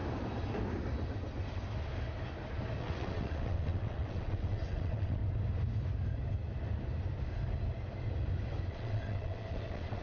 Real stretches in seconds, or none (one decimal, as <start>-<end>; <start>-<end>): 0.0-2.8; 5.2-8.7